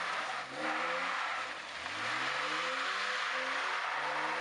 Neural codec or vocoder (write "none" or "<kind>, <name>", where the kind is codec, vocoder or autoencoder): none